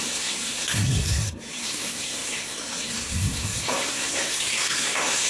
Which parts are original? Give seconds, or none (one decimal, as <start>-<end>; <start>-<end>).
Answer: none